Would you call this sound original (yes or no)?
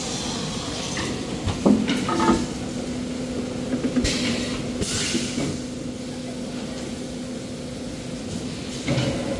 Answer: yes